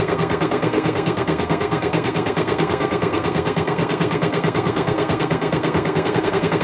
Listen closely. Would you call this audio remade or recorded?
remade